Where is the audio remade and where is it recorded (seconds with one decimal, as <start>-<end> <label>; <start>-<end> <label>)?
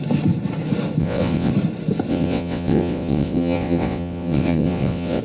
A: 0.0-1.0 recorded; 1.0-1.5 remade; 1.5-2.1 recorded; 2.1-5.2 remade